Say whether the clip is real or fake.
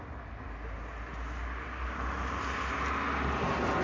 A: real